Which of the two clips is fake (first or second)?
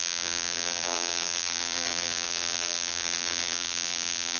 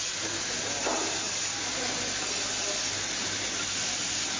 first